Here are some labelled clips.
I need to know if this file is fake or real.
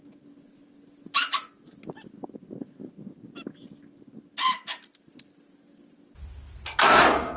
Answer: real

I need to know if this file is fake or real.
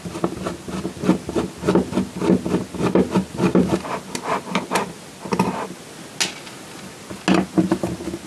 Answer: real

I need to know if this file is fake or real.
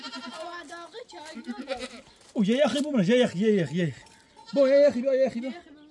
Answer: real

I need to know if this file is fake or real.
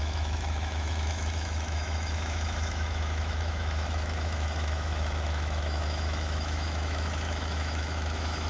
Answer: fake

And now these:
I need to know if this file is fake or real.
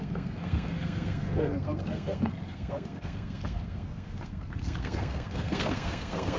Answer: fake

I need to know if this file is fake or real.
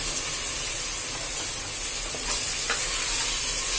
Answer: real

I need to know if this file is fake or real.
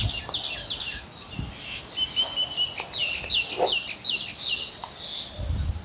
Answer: real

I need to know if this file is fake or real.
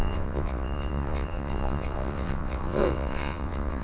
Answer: fake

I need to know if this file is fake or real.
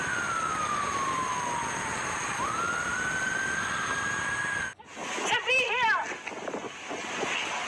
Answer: real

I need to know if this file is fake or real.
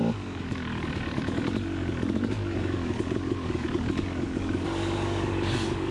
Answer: fake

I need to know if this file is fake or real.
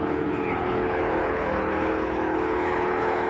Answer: fake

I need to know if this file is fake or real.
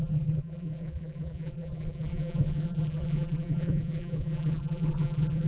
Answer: fake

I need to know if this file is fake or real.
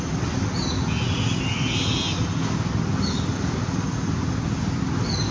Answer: real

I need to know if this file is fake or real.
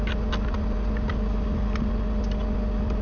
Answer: real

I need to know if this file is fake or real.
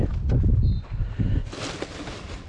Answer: real